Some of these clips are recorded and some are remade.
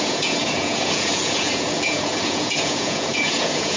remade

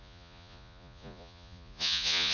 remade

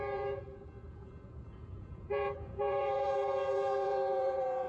remade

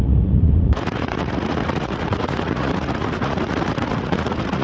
remade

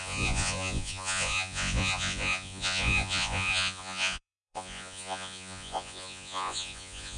remade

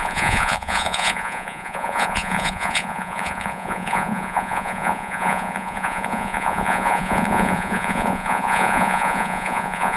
remade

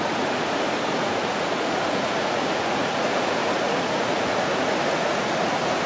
remade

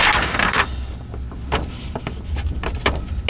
recorded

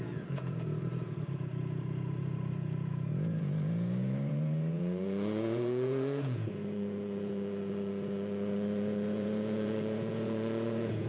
remade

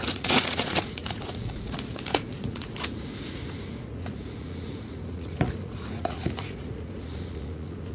remade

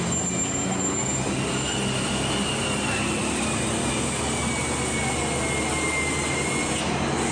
recorded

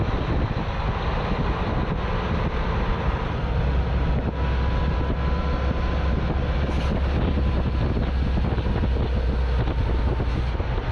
recorded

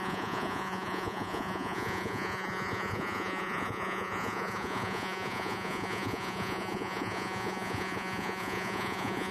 remade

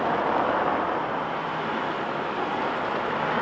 recorded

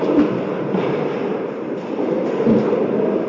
recorded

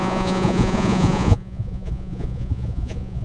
remade